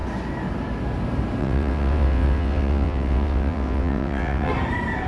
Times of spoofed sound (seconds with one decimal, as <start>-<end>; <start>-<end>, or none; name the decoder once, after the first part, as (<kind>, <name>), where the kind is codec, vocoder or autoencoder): 1.4-4.5 (vocoder, WaveNeXt)